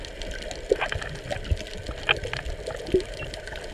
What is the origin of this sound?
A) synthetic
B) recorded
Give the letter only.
B